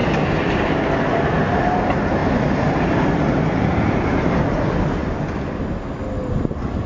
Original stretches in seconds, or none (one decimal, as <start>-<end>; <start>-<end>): 1.4-2.2; 4.4-6.9